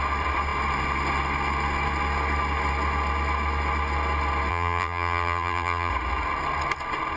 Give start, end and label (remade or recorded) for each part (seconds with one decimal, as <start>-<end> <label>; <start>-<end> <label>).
0.0-4.5 recorded; 4.5-5.9 remade; 5.9-7.2 recorded